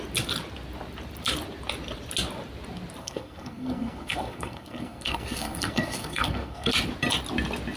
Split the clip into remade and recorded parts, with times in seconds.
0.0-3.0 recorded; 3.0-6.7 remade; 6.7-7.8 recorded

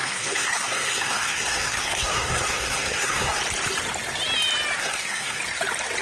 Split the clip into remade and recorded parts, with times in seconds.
0.0-3.4 remade; 3.4-4.8 recorded; 4.8-5.4 remade; 5.4-6.0 recorded

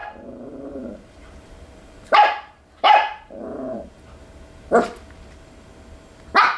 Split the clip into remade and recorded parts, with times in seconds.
0.0-4.0 remade; 4.0-6.6 recorded